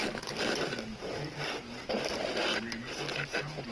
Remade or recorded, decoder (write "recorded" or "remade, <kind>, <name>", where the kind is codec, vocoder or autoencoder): recorded